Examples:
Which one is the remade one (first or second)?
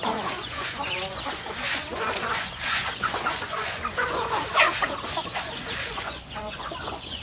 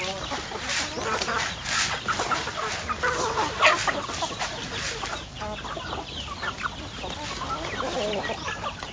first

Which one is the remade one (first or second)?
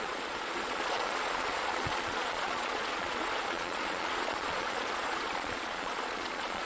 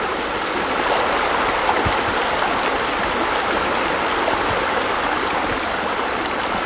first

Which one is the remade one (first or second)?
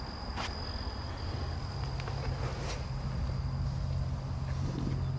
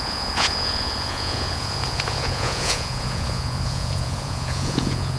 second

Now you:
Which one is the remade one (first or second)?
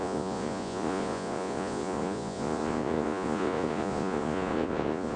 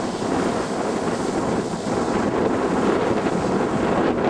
first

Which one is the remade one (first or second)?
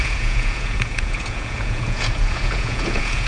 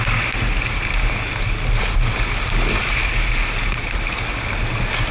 first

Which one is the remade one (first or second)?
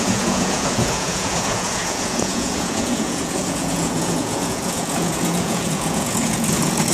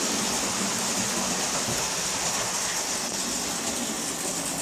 first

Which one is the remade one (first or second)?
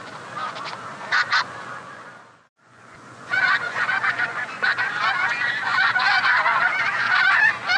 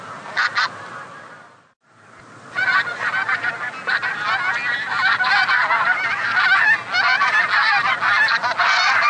first